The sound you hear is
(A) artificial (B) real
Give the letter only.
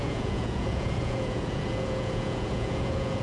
A